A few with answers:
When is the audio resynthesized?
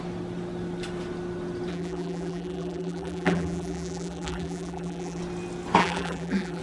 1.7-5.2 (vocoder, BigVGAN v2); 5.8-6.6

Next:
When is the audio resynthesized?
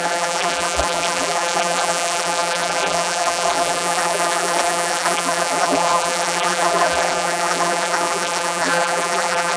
0.0-9.6 (vocoder, BigVGAN v2)